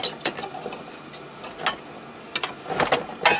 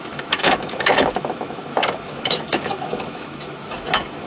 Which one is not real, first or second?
second